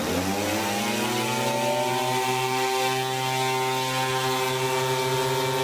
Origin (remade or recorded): recorded